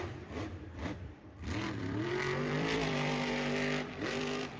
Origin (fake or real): fake